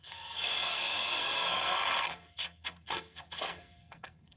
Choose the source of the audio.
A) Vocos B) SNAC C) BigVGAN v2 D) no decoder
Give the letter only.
B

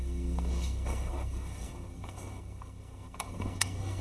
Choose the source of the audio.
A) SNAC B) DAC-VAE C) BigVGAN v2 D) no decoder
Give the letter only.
A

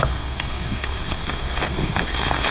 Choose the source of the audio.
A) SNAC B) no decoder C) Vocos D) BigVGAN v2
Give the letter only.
A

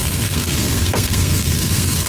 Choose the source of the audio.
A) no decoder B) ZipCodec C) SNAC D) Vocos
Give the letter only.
C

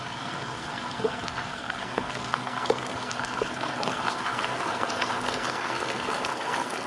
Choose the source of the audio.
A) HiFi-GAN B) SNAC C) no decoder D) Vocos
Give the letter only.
B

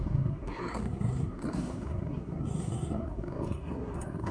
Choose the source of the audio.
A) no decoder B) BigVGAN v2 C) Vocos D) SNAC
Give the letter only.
D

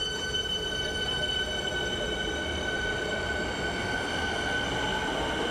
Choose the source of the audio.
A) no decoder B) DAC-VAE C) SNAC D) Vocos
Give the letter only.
A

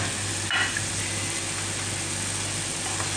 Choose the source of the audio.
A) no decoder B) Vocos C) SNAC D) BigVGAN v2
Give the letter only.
A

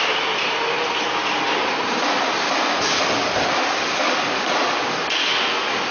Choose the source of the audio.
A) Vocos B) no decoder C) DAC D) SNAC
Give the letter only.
B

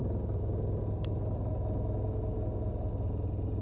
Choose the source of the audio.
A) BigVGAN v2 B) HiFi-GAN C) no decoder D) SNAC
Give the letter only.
C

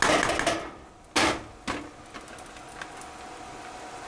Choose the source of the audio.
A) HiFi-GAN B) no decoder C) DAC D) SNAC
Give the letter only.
B